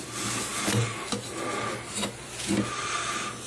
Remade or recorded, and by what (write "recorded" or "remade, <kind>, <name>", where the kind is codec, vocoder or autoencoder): recorded